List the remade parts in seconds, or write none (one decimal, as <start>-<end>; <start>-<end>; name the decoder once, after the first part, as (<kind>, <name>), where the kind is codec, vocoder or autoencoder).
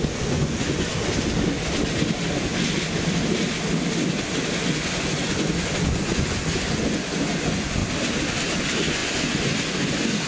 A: 0.0-0.9 (vocoder, Vocos); 4.6-7.8; 8.6-10.3